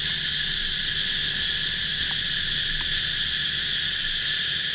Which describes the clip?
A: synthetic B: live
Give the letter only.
B